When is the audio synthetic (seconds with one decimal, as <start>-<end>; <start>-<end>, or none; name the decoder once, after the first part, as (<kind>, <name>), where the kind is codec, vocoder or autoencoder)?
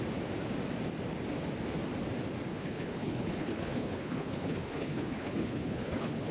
2.5-6.3 (codec, HILCodec)